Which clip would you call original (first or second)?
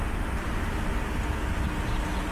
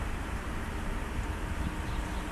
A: first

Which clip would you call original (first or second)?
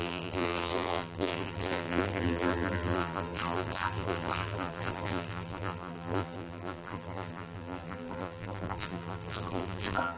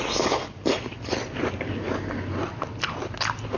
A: second